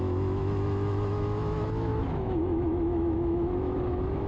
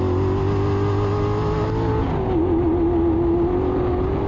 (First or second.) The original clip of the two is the second